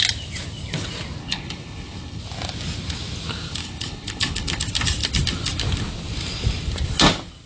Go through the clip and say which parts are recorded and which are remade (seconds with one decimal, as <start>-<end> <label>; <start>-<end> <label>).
0.0-1.2 recorded; 1.2-2.2 remade; 2.2-3.6 recorded; 3.6-4.6 remade; 4.6-7.5 recorded